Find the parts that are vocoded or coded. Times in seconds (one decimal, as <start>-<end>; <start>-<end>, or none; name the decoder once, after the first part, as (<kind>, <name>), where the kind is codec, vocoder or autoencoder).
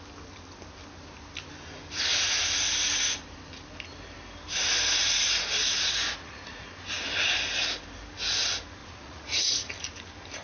6.1-6.7 (vocoder, Vocos); 8.8-9.5